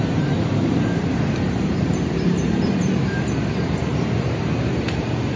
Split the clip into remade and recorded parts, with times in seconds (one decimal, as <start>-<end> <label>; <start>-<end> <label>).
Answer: 0.0-5.4 remade